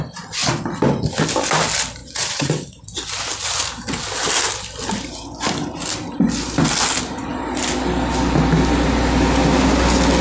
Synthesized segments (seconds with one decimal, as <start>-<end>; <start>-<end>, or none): 2.0-2.8